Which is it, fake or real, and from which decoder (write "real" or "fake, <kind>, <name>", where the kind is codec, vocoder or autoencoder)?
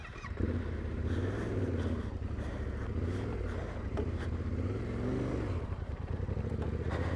fake, vocoder, BigVGAN v2